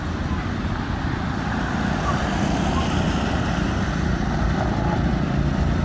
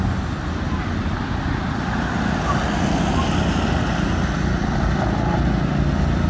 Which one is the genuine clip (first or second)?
second